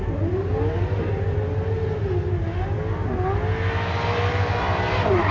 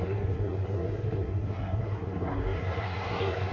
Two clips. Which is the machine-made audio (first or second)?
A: second